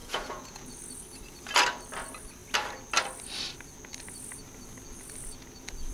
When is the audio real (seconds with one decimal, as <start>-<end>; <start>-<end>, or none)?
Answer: 0.8-5.9